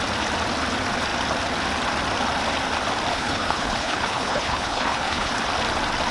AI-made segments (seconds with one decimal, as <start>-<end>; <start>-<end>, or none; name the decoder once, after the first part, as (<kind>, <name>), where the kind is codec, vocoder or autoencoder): 3.1-5.3 (codec, HILCodec)